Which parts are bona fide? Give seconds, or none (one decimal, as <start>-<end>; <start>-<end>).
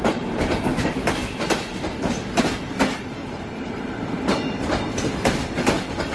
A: 0.0-0.7; 2.3-3.2; 4.2-6.1